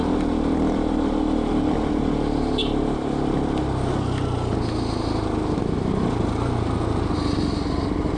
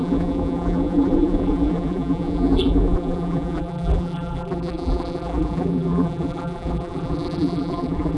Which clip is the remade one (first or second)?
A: second